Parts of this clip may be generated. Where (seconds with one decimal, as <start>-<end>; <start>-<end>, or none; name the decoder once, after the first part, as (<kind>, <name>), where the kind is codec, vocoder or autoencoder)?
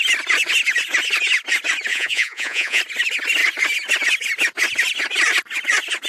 1.9-2.8 (vocoder, Vocos)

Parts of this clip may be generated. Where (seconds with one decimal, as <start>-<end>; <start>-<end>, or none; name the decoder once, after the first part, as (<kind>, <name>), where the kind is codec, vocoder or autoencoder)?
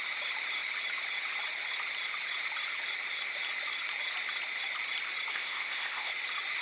5.3-6.1 (codec, ZipCodec)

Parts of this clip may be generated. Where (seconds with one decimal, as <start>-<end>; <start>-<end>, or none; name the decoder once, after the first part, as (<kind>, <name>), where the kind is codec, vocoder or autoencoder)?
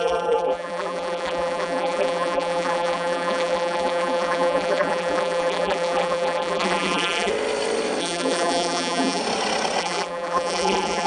0.0-7.3 (vocoder, BigVGAN v2); 8.0-9.2; 9.8-11.1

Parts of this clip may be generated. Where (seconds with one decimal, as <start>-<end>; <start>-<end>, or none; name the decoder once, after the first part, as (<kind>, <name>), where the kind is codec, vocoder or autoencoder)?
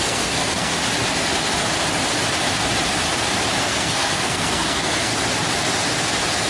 0.0-0.7 (codec, SNAC); 3.6-5.1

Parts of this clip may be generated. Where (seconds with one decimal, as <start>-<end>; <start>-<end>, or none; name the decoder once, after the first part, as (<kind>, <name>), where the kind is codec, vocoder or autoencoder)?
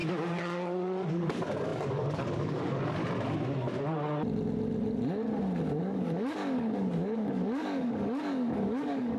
1.1-3.0 (codec, DAC); 5.8-9.2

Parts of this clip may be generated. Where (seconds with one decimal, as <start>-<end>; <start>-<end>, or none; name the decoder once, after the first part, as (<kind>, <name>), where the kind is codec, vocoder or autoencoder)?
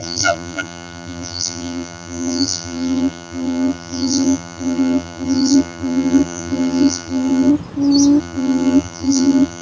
0.0-7.5 (vocoder, BigVGAN v2); 8.2-9.6